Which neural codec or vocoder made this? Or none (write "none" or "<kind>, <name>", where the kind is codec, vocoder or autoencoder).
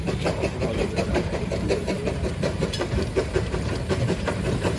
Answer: vocoder, BigVGAN v2